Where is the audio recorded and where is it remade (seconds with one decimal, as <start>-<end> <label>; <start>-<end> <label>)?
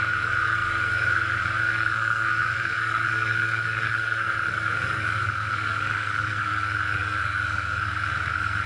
0.0-8.7 remade